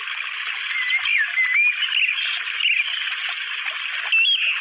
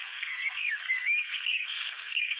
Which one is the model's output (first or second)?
second